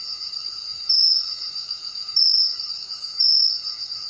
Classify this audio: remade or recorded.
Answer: remade